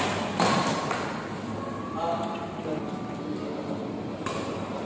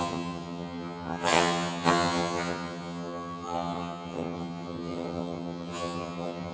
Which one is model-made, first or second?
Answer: second